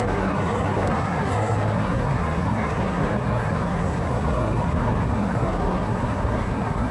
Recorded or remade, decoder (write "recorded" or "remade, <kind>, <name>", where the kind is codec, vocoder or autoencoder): remade, codec, SNAC